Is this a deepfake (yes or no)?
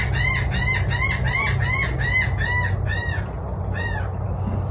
no